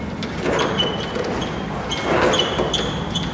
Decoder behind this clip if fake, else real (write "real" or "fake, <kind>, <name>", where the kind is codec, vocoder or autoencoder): real